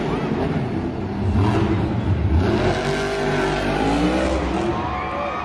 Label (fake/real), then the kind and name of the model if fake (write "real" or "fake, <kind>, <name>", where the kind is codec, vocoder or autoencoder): real